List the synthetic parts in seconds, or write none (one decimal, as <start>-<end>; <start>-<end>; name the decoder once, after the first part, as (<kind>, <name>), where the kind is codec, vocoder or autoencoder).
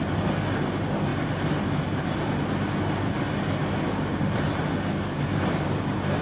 none